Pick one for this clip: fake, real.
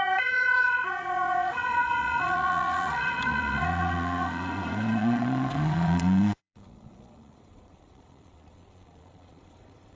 fake